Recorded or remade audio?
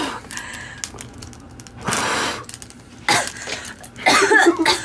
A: recorded